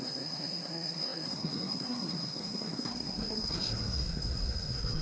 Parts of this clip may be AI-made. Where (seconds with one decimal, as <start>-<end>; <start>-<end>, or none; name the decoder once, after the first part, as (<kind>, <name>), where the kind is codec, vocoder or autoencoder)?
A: 0.0-5.0 (codec, SNAC)